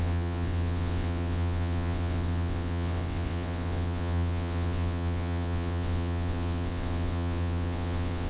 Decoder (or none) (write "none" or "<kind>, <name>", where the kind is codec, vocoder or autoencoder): vocoder, WaveNeXt